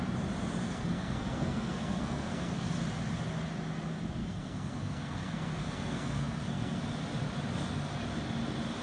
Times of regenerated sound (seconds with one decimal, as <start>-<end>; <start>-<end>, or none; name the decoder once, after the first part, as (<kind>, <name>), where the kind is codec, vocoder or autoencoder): 0.6-2.7 (codec, SNAC); 4.2-6.8